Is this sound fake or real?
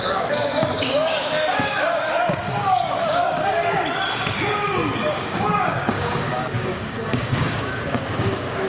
fake